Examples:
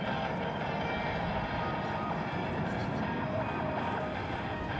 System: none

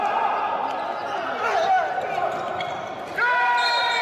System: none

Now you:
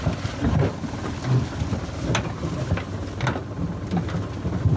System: none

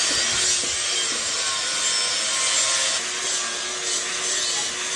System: none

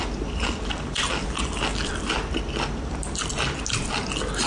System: none